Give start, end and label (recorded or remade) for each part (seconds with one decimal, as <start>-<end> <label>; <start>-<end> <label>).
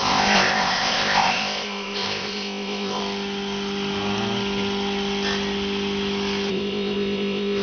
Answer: 0.0-3.0 remade; 3.0-6.5 recorded; 6.5-7.6 remade